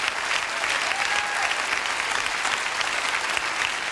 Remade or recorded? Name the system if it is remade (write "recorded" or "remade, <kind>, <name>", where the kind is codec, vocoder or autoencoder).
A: recorded